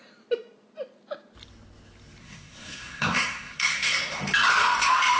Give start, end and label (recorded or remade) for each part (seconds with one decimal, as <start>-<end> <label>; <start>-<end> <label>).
0.0-2.2 recorded; 2.2-4.2 remade; 4.2-5.2 recorded